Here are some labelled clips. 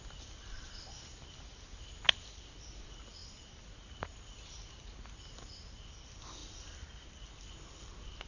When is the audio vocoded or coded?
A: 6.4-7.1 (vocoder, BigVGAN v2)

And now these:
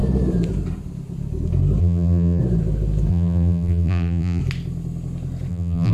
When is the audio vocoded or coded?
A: 1.8-2.4 (vocoder, BigVGAN v2); 3.1-4.4; 5.5-5.9

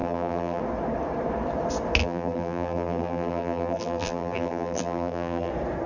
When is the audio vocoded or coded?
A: 0.0-0.6 (vocoder, BigVGAN v2); 2.0-5.5

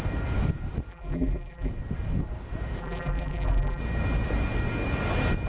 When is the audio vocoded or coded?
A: 0.9-1.7 (vocoder, BigVGAN v2); 2.8-3.8